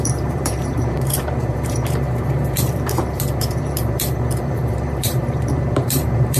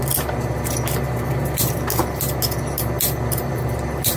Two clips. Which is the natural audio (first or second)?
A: second